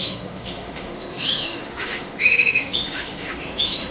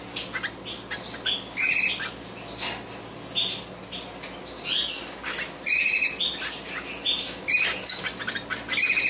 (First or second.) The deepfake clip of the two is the first